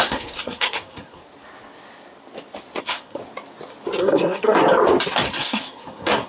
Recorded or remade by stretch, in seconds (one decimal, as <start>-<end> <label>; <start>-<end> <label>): 0.0-1.2 remade; 1.2-2.8 recorded; 2.8-3.2 remade; 3.2-4.0 recorded; 4.0-4.6 remade; 4.6-5.3 recorded; 5.3-6.3 remade